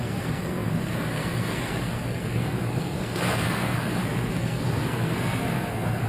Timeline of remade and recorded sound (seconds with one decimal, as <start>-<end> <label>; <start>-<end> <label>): 0.0-6.1 remade

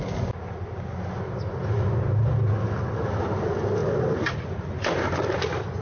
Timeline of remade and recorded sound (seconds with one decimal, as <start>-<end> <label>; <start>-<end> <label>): 0.0-5.8 recorded